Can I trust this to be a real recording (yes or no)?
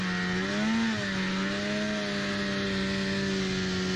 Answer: yes